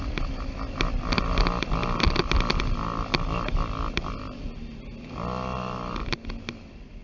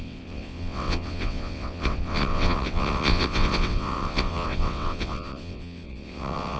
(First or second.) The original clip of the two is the first